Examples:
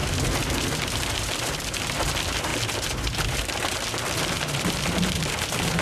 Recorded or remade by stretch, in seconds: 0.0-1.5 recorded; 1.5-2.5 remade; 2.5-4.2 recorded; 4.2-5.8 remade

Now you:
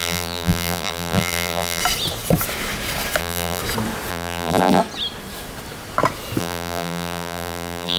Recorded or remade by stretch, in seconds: 0.0-1.8 remade; 1.8-3.2 recorded; 3.2-3.6 remade; 3.6-4.1 recorded; 4.1-4.8 remade; 4.8-6.4 recorded; 6.4-8.0 remade

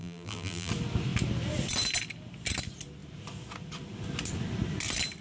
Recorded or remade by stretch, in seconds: 0.0-0.7 remade; 0.7-5.2 recorded

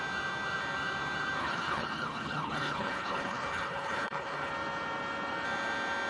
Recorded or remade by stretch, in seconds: 0.0-1.4 recorded; 1.4-4.5 remade; 4.5-6.1 recorded

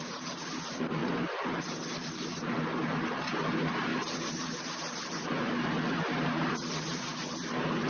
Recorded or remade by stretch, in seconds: 0.0-1.0 remade; 1.0-2.3 recorded; 2.3-2.7 remade; 2.7-3.5 recorded; 3.5-3.9 remade; 3.9-5.4 recorded; 5.4-7.9 remade

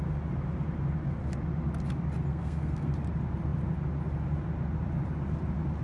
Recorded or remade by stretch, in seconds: 0.0-2.3 recorded; 2.3-2.9 remade; 2.9-5.8 recorded